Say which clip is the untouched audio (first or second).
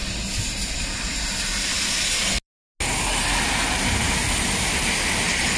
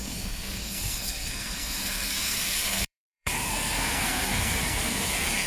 first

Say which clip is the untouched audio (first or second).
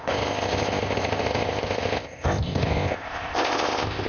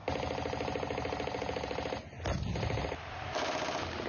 second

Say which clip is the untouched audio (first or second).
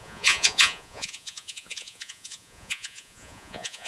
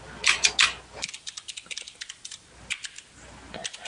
second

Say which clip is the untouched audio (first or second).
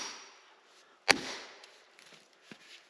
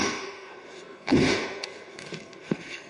first